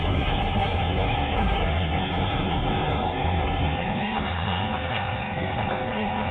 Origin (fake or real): fake